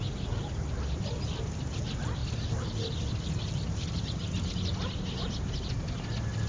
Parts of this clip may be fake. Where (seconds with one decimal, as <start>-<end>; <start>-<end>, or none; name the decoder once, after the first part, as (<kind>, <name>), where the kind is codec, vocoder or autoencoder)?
none